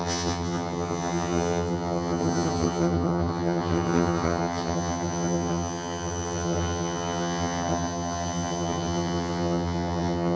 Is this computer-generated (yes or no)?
yes